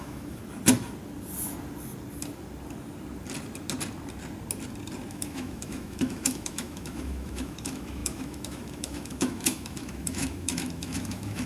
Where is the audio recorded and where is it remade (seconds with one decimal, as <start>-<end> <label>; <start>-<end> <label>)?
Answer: 0.0-0.4 remade; 0.4-5.1 recorded; 5.1-11.5 remade